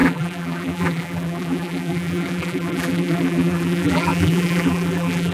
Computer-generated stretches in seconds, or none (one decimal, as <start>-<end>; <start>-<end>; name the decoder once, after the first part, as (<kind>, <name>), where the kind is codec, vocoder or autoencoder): 0.0-5.3 (vocoder, BigVGAN v2)